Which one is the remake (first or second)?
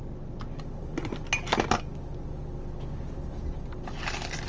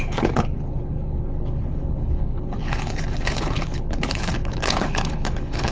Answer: second